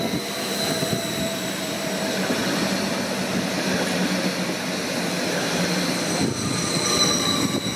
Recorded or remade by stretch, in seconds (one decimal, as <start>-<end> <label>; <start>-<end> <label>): 0.0-2.4 remade; 2.4-5.4 recorded; 5.4-7.8 remade